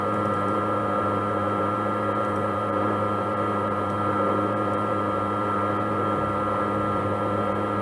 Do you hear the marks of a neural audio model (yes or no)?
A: yes